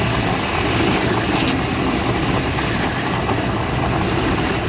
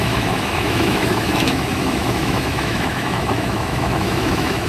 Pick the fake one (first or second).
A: second